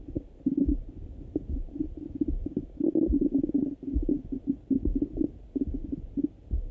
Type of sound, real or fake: real